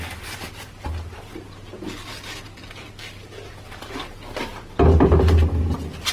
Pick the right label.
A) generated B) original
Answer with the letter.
B